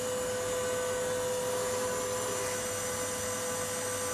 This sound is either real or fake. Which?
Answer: real